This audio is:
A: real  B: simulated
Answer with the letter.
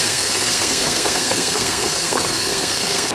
B